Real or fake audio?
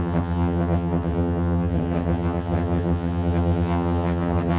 fake